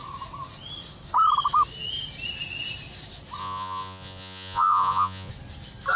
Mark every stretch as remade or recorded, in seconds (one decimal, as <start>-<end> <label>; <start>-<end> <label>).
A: 0.0-3.4 recorded; 3.4-5.3 remade; 5.3-6.0 recorded

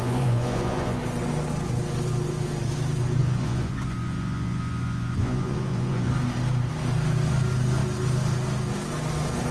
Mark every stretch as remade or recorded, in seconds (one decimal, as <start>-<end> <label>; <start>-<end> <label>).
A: 0.0-1.0 remade; 1.0-3.2 recorded; 3.2-6.1 remade; 6.1-9.5 recorded

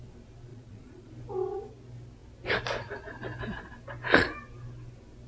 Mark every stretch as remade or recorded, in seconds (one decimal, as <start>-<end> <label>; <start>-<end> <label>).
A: 0.0-0.5 recorded; 0.5-1.1 remade; 1.1-5.3 recorded